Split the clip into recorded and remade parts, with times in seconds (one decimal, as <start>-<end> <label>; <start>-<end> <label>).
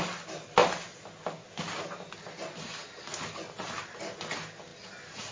0.0-5.3 recorded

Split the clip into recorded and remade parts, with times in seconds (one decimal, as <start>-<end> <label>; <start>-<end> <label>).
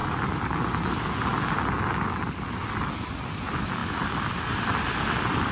0.0-5.5 recorded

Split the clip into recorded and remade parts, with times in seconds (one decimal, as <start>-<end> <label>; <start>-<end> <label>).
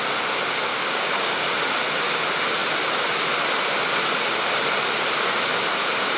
0.0-0.7 recorded; 0.7-1.4 remade; 1.4-6.2 recorded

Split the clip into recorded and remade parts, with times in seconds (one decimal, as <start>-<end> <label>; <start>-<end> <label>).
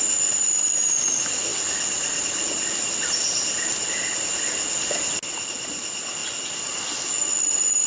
0.0-7.9 recorded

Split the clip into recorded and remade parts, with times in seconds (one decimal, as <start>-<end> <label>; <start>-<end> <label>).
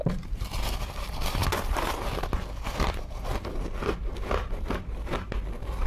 0.0-5.9 recorded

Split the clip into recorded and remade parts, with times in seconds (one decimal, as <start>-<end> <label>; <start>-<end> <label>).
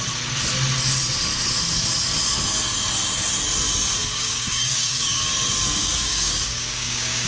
0.0-4.0 recorded; 4.0-5.3 remade; 5.3-5.8 recorded; 5.8-7.3 remade